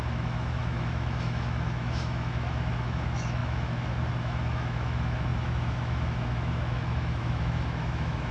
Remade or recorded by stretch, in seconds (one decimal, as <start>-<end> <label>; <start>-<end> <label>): 0.0-8.3 remade